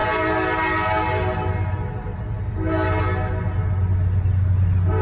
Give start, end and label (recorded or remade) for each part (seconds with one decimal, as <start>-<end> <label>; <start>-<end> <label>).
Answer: 0.0-5.0 recorded